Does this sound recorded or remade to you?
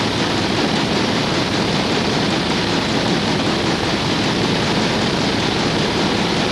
remade